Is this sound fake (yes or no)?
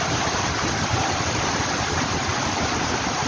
yes